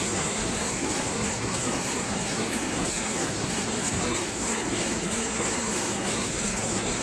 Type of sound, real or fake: fake